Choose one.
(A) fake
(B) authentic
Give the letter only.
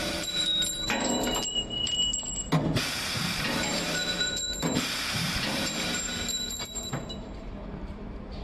A